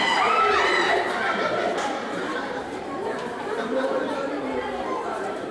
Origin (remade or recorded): remade